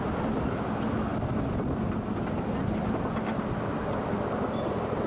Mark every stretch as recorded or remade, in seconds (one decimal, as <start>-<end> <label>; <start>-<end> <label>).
0.0-5.1 recorded